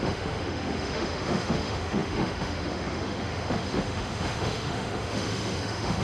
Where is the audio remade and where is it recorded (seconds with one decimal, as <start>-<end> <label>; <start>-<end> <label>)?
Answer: 0.0-6.0 remade